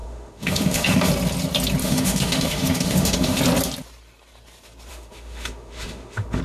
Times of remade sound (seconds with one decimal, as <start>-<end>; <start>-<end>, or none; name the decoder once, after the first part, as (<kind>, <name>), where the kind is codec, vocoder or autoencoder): 0.0-1.1 (autoencoder, DAC-VAE); 1.8-3.4; 4.9-6.4